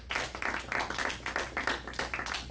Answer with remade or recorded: recorded